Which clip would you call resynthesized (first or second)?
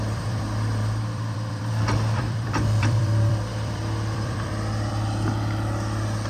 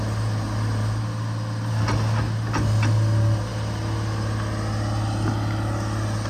first